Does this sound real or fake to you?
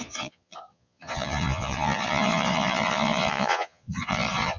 fake